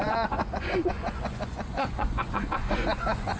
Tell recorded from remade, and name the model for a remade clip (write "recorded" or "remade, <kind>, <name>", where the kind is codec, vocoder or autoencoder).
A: remade, vocoder, Vocos